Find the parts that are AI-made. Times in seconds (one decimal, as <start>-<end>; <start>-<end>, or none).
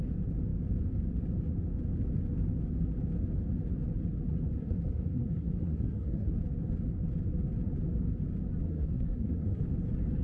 4.6-6.3; 8.7-9.6